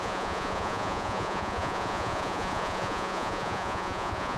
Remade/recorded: remade